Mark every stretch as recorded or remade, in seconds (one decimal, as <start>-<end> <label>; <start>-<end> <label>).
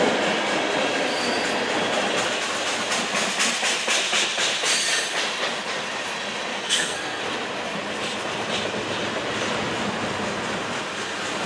0.0-6.5 recorded; 6.5-7.2 remade; 7.2-11.5 recorded